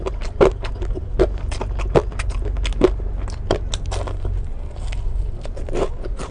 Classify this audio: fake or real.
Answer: real